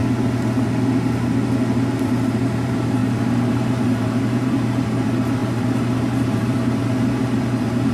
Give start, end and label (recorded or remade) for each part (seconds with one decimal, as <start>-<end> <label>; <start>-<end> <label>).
0.0-2.0 recorded; 2.0-3.0 remade; 3.0-3.5 recorded; 3.5-7.9 remade